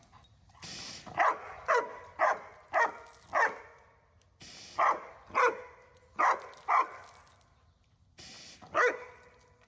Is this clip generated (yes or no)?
no